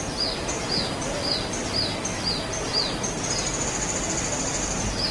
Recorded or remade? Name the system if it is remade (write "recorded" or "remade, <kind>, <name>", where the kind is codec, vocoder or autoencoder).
recorded